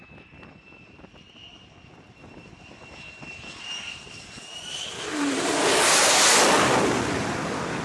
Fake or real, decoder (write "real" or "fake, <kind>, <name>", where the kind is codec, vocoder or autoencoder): fake, vocoder, BigVGAN v2